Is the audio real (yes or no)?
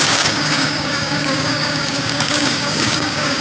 no